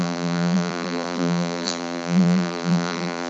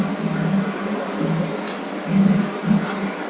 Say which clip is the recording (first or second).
second